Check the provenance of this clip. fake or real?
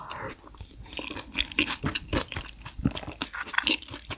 real